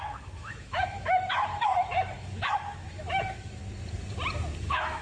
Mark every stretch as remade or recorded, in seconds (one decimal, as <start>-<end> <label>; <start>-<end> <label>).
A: 0.0-3.6 remade; 3.6-4.6 recorded; 4.6-5.0 remade